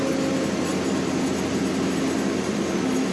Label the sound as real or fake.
real